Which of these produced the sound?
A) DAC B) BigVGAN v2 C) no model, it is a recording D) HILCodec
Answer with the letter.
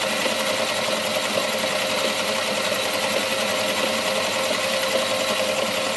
C